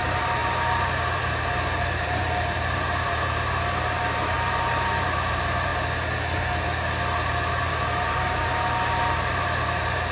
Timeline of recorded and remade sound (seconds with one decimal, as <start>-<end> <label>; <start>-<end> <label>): 0.0-5.7 remade; 5.7-7.6 recorded; 7.6-10.1 remade